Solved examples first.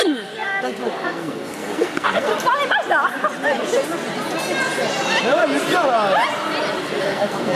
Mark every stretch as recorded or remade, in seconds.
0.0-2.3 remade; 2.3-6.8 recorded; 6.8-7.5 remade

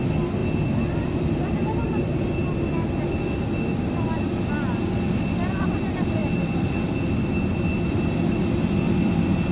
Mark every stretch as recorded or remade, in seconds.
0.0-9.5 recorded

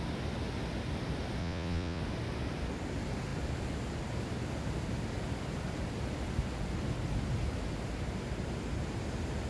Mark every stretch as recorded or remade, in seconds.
0.0-1.4 recorded; 1.4-2.0 remade; 2.0-9.5 recorded